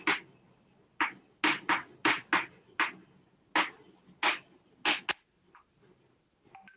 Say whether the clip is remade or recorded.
recorded